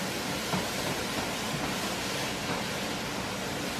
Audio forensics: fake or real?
real